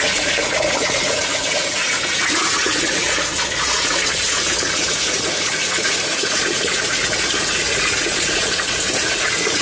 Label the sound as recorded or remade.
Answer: remade